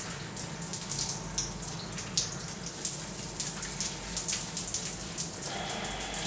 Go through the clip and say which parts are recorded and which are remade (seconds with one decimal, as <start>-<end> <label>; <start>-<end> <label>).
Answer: 0.0-6.3 recorded